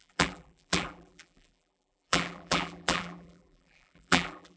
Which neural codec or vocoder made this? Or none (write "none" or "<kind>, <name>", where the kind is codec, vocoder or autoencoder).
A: vocoder, BigVGAN v2